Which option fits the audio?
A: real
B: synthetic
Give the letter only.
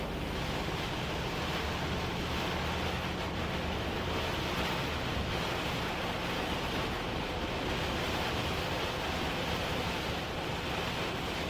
A